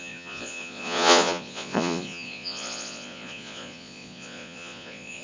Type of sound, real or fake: fake